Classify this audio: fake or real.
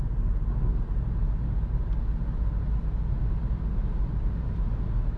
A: real